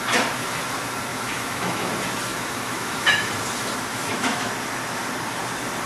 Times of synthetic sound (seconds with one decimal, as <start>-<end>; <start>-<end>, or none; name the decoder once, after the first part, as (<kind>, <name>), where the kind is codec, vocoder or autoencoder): 1.1-1.9 (autoencoder, DAC-VAE); 2.3-3.3; 3.9-4.5